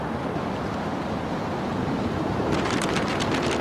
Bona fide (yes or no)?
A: no